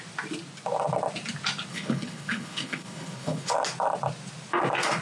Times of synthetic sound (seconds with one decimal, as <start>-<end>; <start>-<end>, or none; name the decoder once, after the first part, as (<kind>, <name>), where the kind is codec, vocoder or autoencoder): 1.7-3.5 (codec, HILCodec)